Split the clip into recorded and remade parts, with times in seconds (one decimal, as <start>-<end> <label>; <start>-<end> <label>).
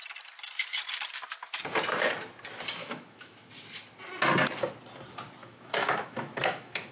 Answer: 0.0-2.8 recorded; 2.8-3.5 remade; 3.5-5.4 recorded; 5.4-6.9 remade